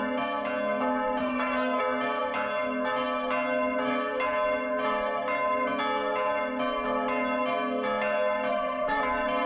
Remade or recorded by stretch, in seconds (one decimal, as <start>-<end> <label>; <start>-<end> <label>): 0.0-1.2 recorded; 1.2-1.8 remade; 1.8-8.5 recorded; 8.5-9.0 remade; 9.0-9.5 recorded